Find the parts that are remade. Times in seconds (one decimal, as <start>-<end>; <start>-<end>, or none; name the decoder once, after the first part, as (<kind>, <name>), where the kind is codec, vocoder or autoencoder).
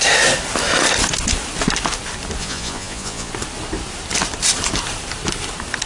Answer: 2.4-3.3 (vocoder, Vocos)